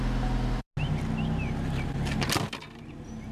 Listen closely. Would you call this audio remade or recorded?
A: recorded